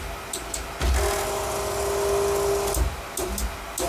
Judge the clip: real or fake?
real